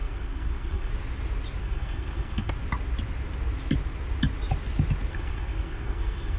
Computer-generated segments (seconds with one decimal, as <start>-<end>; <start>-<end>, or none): 0.0-0.9; 1.6-2.5; 5.1-6.4